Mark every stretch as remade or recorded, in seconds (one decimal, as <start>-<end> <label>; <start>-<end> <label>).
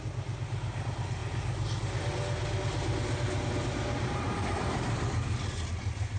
0.0-6.2 recorded